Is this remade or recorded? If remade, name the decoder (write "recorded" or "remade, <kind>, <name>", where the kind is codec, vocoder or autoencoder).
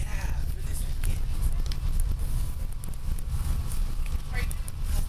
recorded